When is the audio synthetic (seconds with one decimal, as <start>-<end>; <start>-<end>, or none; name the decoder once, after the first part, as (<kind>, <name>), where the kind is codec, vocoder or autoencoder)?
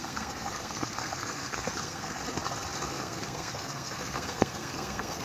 0.0-2.2 (codec, SNAC); 2.9-5.2